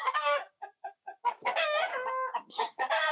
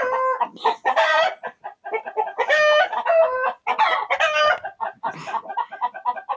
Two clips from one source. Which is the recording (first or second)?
second